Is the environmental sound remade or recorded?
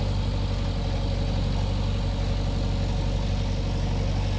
recorded